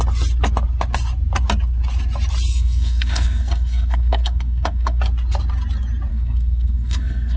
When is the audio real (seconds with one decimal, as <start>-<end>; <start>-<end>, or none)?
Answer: 0.0-2.5; 5.0-6.1